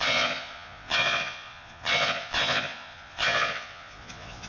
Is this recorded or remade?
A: remade